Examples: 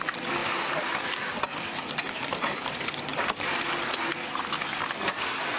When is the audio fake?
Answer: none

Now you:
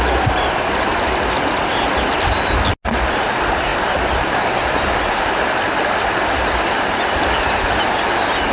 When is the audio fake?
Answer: none

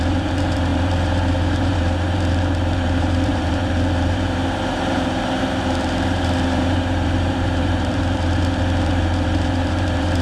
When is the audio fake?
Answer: 0.0-10.2